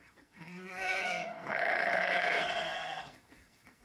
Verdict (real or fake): fake